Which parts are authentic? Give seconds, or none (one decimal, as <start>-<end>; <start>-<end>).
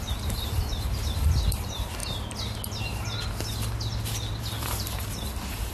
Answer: 2.0-4.4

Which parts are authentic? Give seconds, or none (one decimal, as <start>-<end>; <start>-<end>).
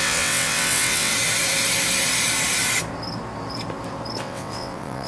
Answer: 1.1-4.2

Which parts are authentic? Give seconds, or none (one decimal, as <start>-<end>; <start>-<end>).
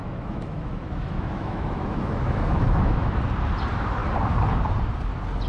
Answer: 3.2-5.5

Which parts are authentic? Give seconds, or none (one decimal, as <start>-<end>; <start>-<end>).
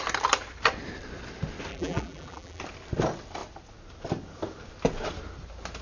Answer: 0.0-1.7; 2.6-5.8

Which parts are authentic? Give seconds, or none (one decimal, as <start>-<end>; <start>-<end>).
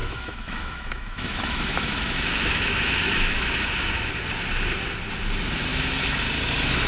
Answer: 4.1-5.7; 6.2-6.9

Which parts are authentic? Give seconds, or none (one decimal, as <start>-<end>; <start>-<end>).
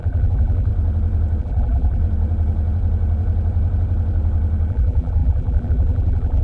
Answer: 0.7-1.4; 2.0-4.7